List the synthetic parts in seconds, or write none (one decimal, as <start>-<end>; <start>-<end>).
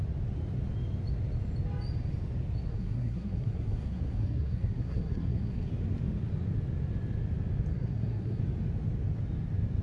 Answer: 2.7-5.7; 7.7-8.4